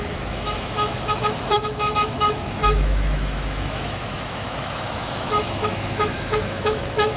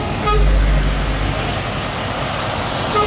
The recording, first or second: second